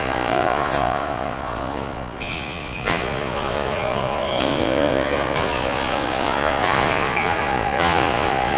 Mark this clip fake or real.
fake